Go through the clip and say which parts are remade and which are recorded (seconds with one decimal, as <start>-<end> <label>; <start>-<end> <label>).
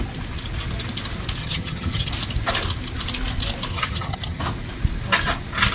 0.0-1.4 recorded; 1.4-2.1 remade; 2.1-3.7 recorded; 3.7-4.4 remade; 4.4-5.7 recorded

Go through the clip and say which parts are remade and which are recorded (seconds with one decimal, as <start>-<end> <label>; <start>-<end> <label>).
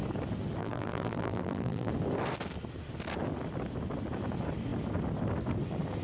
0.0-0.6 recorded; 0.6-1.9 remade; 1.9-6.0 recorded